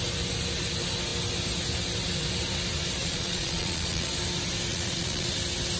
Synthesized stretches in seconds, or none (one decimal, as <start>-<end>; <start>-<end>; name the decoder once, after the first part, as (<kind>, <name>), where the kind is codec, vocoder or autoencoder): 3.0-4.1 (vocoder, Vocos); 4.7-5.3

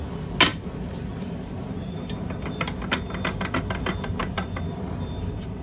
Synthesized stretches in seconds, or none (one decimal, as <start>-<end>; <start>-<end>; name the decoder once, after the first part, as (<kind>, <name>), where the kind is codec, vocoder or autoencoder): 0.5-2.4 (vocoder, BigVGAN v2)

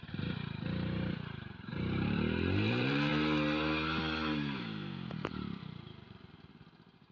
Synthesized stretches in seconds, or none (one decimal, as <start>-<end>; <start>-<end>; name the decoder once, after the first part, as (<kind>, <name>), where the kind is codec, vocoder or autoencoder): 0.0-3.1 (vocoder, BigVGAN v2); 5.1-7.1

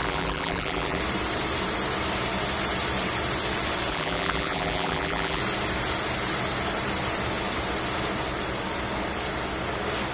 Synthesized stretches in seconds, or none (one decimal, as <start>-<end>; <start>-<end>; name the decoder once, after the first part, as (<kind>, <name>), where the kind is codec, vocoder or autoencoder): 0.0-1.0 (vocoder, BigVGAN v2); 3.9-5.4

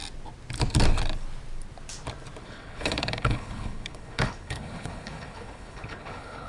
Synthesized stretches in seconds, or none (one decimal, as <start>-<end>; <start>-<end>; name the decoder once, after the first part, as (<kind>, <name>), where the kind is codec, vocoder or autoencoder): 2.4-6.5 (codec, HILCodec)

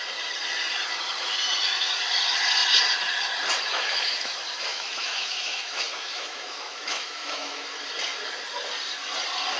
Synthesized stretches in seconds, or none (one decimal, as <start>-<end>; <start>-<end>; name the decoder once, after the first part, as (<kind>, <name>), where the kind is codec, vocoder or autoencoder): 3.7-4.3 (autoencoder, DAC-VAE); 4.7-7.8